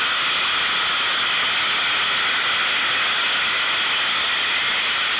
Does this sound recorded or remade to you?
recorded